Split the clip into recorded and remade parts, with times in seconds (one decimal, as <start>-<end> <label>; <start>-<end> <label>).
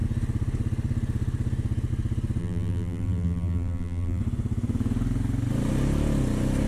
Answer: 0.0-2.4 recorded; 2.4-4.2 remade; 4.2-6.7 recorded